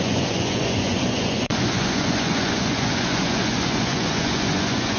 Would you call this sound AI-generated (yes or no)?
yes